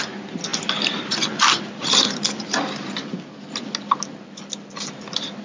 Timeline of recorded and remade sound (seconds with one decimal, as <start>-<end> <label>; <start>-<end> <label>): 0.0-5.4 recorded